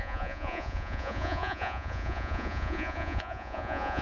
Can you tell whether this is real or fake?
fake